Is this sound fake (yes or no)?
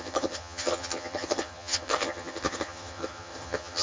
yes